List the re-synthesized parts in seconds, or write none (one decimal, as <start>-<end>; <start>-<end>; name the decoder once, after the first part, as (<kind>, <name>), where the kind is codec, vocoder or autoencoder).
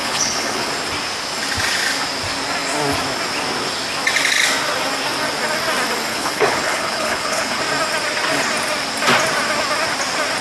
0.0-0.7 (codec, HILCodec); 6.1-7.6